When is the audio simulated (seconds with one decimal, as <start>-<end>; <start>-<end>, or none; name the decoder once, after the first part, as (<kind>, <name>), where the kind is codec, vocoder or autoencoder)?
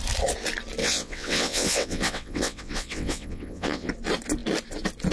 0.8-3.9 (vocoder, WaveNeXt)